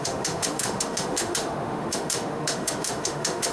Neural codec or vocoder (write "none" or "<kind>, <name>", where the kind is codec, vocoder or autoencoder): autoencoder, DAC-VAE